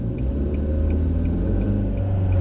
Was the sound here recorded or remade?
recorded